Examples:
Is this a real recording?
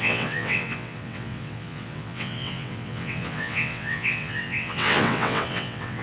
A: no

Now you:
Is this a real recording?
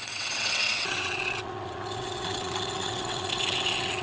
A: no